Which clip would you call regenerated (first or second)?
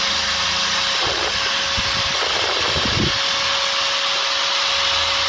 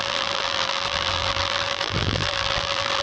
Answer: second